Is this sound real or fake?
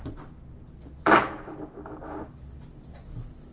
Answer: real